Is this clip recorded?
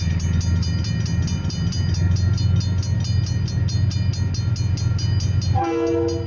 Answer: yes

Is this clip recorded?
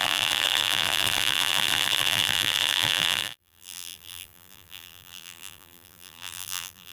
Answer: no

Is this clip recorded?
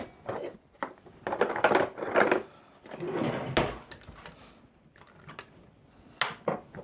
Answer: yes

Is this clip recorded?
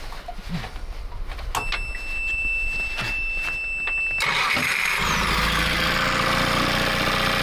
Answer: yes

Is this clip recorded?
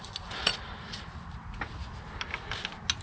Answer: yes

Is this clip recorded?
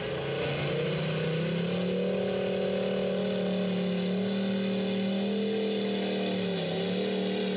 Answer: yes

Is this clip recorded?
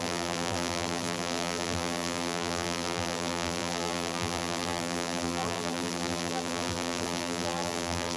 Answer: no